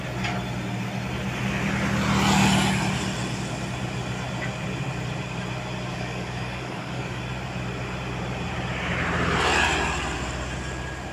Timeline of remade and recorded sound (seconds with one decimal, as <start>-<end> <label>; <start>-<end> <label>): 0.0-5.9 recorded; 5.9-7.2 remade; 7.2-11.1 recorded